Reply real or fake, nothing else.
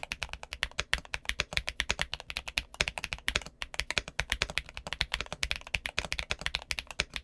real